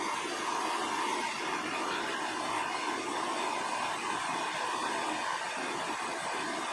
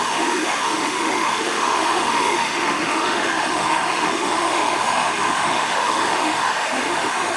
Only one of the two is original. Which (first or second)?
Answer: first